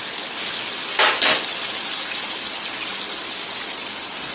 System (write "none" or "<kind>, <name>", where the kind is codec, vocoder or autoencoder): none